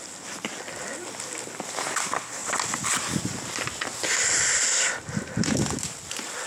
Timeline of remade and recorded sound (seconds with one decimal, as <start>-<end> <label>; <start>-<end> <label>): 0.0-6.5 recorded